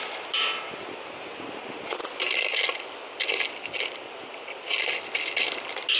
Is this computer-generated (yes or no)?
no